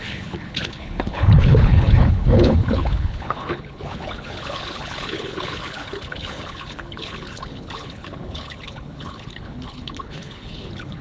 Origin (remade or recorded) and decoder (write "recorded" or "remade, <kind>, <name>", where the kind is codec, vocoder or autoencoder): remade, codec, HILCodec